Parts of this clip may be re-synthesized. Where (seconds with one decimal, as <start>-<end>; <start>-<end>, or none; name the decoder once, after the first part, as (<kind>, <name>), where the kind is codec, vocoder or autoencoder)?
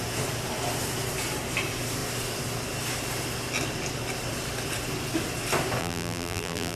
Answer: 5.8-6.8 (vocoder, BigVGAN v2)